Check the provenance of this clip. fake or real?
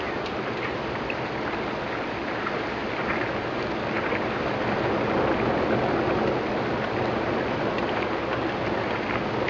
real